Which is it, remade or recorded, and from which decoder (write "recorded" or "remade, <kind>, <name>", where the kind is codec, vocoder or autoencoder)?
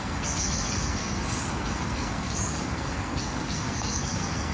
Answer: remade, codec, SNAC